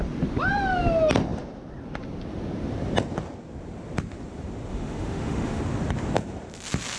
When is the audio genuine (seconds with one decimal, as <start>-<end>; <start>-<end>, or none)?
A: 0.0-4.7; 5.6-7.0